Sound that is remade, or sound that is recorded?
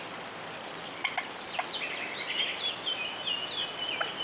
recorded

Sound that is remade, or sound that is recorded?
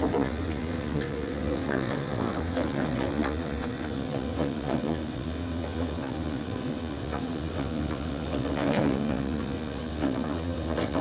remade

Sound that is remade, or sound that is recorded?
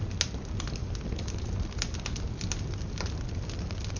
recorded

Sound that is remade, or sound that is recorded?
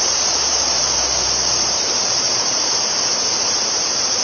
remade